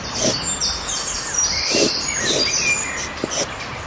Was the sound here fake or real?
real